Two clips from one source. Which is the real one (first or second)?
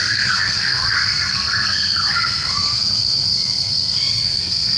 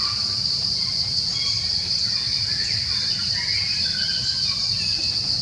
second